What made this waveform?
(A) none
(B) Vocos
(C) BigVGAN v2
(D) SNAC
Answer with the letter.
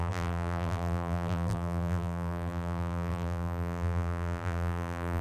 C